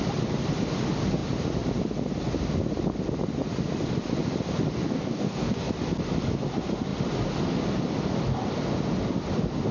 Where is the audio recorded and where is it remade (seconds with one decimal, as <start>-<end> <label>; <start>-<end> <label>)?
0.0-4.8 recorded; 4.8-5.7 remade; 5.7-9.7 recorded